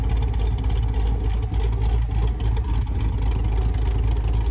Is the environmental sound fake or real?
real